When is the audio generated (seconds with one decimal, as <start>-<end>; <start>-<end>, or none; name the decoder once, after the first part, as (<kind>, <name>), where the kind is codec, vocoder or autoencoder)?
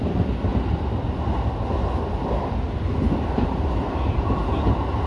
0.0-0.5 (vocoder, BigVGAN v2); 3.2-4.4